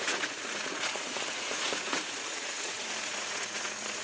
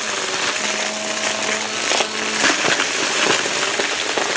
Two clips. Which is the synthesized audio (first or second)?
first